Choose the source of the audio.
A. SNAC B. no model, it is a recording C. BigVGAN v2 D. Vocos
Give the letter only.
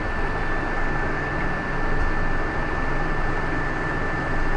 B